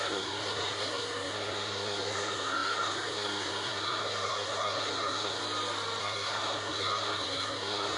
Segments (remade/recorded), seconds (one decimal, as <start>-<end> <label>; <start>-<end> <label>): 0.0-5.4 remade; 5.4-6.0 recorded; 6.0-8.0 remade